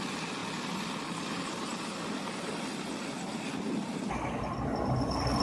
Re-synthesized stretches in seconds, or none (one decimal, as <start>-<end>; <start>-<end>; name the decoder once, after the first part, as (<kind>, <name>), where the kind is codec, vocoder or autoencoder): none